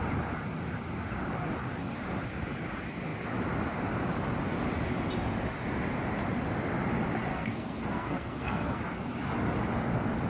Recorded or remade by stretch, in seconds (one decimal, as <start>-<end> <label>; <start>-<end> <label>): 0.0-7.3 recorded; 7.3-8.8 remade; 8.8-10.3 recorded